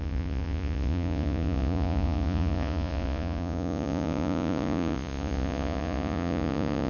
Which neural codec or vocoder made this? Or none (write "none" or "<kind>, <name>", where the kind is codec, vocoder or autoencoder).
vocoder, Vocos